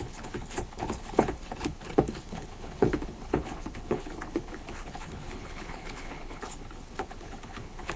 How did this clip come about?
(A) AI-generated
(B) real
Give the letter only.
A